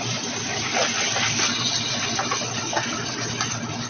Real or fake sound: real